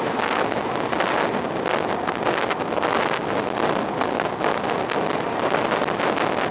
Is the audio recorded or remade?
recorded